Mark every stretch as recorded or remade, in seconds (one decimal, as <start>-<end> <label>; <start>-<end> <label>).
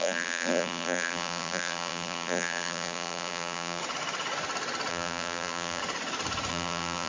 0.0-3.8 remade; 3.8-4.9 recorded; 4.9-5.8 remade; 5.8-6.5 recorded; 6.5-7.1 remade